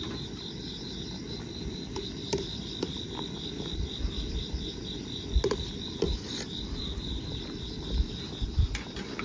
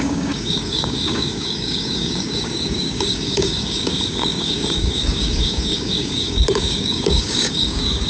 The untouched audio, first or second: first